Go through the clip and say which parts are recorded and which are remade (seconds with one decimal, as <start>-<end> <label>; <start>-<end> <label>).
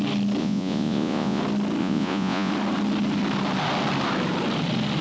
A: 0.0-0.4 recorded; 0.4-1.4 remade; 1.4-1.8 recorded; 1.8-2.5 remade; 2.5-5.0 recorded